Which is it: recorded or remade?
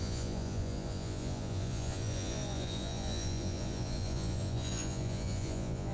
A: remade